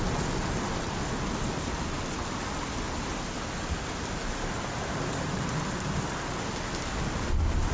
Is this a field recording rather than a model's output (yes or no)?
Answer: yes